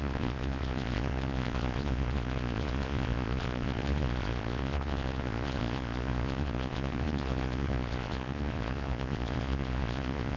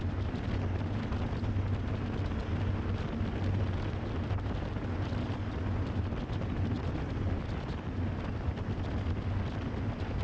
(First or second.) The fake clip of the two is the first